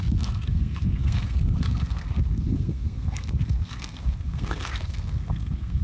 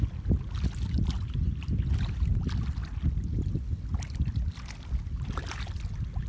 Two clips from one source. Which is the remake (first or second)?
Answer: first